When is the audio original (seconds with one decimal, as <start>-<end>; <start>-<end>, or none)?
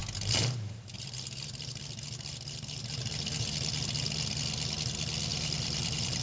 3.7-5.3